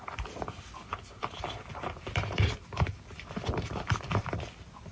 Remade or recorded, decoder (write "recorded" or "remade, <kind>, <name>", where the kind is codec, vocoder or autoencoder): recorded